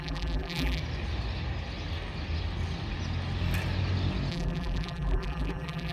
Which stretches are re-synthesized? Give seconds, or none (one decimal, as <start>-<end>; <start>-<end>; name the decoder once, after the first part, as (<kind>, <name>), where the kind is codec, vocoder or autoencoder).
0.0-0.8 (vocoder, BigVGAN v2); 4.3-5.9